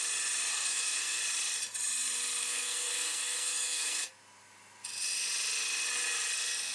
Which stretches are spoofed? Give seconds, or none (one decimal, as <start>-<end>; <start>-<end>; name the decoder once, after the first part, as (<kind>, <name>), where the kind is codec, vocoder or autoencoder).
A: 0.5-1.2 (codec, SNAC); 2.4-4.1